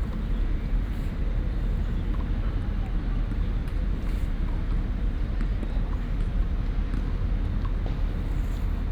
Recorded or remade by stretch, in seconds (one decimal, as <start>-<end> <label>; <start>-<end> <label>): 0.0-1.2 remade; 1.2-3.6 recorded; 3.6-6.5 remade; 6.5-8.9 recorded